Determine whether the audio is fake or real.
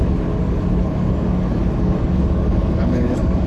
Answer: fake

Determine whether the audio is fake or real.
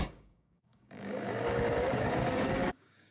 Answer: fake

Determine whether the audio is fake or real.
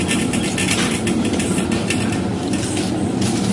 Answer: real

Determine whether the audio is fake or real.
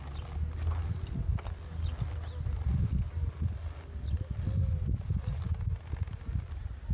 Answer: real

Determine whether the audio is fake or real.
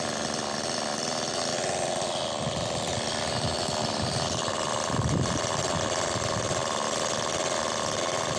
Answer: real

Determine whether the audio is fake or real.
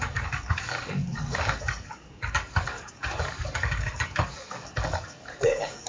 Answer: fake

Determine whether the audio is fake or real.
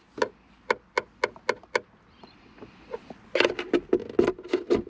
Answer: real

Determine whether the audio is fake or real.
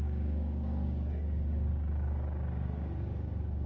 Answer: fake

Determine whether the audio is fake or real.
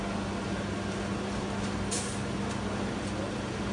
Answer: real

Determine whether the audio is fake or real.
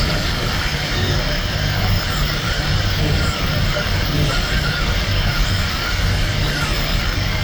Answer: fake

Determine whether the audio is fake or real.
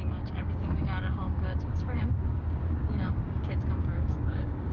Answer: fake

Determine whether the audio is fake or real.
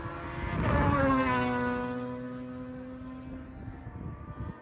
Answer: real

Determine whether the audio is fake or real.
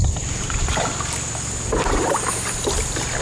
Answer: real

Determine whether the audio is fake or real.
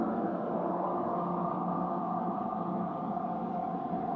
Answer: fake